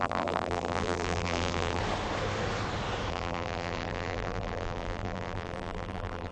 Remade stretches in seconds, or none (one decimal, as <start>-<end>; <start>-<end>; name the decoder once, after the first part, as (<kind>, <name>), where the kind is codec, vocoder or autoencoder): 0.0-1.8 (vocoder, BigVGAN v2); 3.1-6.3